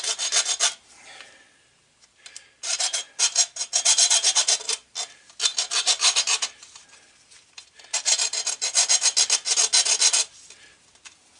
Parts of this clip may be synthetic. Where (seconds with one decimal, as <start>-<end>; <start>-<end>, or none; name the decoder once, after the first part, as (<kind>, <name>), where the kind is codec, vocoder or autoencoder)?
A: none